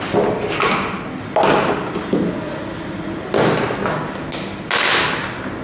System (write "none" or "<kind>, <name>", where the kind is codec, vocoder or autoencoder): none